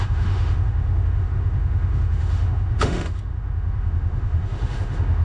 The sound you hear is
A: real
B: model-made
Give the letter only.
B